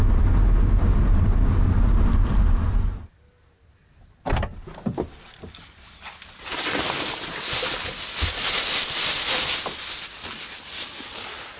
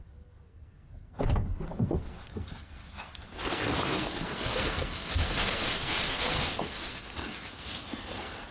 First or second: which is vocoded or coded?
second